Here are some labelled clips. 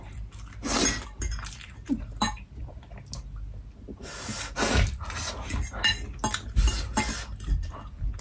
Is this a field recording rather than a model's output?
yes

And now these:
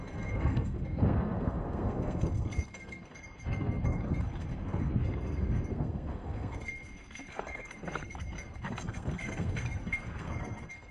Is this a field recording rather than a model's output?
no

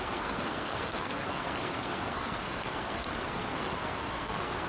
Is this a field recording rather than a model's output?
no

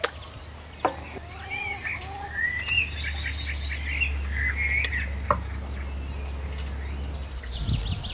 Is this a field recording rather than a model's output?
yes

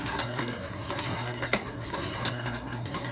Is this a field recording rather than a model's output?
no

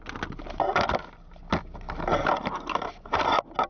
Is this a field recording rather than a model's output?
yes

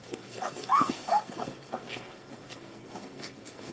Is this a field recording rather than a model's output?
no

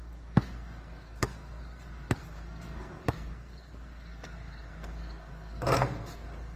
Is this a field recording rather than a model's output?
no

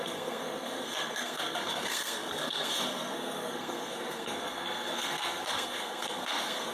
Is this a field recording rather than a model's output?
no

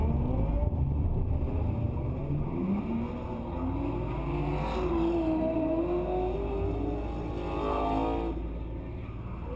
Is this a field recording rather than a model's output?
yes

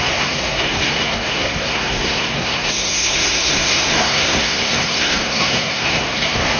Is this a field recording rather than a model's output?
no